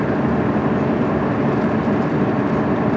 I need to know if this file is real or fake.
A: fake